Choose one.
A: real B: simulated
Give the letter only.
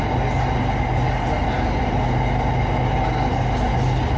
A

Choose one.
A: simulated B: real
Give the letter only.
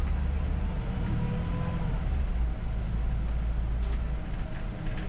B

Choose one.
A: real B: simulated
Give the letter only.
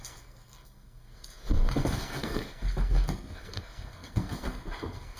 B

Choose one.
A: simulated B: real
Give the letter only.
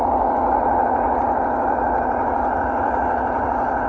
B